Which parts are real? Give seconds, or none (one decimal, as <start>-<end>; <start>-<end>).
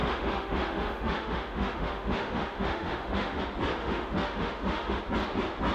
3.4-3.8; 5.0-5.7